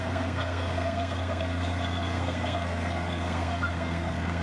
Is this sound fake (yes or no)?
yes